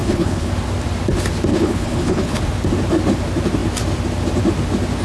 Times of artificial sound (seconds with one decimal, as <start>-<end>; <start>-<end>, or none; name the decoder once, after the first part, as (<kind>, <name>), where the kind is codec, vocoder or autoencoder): 0.0-0.5 (codec, HILCodec); 1.5-2.4